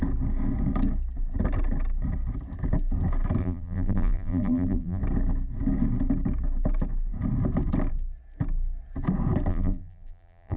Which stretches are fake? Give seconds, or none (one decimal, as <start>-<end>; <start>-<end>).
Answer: 3.4-5.0; 9.5-10.6